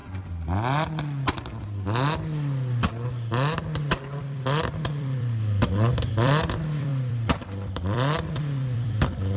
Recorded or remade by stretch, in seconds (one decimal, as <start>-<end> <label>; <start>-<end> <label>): 0.0-4.2 recorded; 4.2-9.4 remade

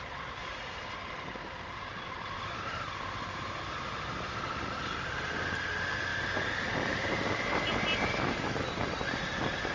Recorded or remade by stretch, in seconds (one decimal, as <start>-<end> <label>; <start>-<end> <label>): 0.0-0.4 recorded; 0.4-2.8 remade; 2.8-6.1 recorded; 6.1-7.3 remade; 7.3-9.7 recorded

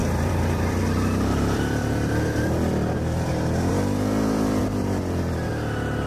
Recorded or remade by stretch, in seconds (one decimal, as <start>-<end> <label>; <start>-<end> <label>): 0.0-3.7 remade; 3.7-4.6 recorded; 4.6-5.5 remade; 5.5-6.1 recorded

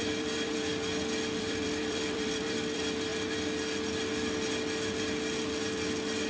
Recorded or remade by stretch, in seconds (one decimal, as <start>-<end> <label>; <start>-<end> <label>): 0.0-0.7 remade; 0.7-1.4 recorded; 1.4-3.1 remade; 3.1-6.3 recorded

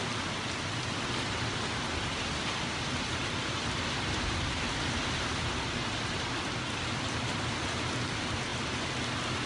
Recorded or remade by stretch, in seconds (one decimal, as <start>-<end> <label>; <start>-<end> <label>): 0.0-8.5 recorded; 8.5-9.5 remade